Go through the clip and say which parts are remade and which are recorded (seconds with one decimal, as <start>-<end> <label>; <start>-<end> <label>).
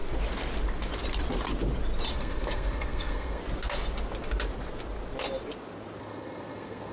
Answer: 0.0-2.1 recorded; 2.1-3.4 remade; 3.4-6.0 recorded; 6.0-6.9 remade